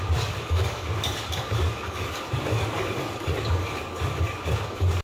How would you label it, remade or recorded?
remade